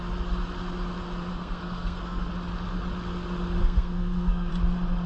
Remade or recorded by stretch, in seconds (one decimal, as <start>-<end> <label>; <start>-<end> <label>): 0.0-1.3 recorded; 1.3-2.3 remade; 2.3-3.6 recorded; 3.6-4.5 remade; 4.5-5.1 recorded